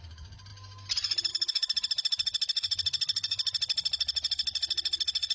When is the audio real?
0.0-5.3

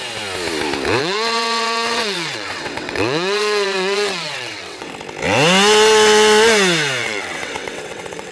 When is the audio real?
0.0-1.0; 4.9-7.0

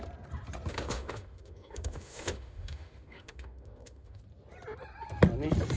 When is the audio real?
0.0-0.7; 4.2-5.8

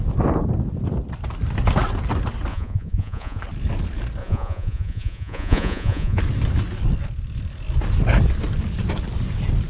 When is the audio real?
0.0-2.5; 3.4-4.2; 6.2-9.7

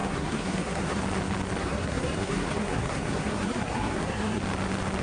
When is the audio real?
1.0-1.6; 4.4-5.0

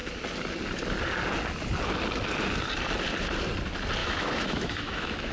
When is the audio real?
0.0-4.0